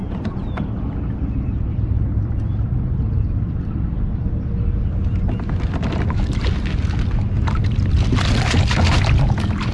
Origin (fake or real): real